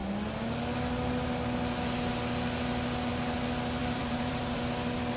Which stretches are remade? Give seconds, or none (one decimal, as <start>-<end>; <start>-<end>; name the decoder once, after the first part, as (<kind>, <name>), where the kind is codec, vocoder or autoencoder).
3.8-4.6 (vocoder, BigVGAN v2)